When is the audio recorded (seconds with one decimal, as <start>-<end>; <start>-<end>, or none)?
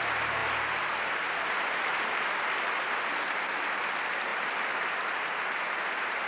0.0-6.3